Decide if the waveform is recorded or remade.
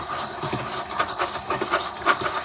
remade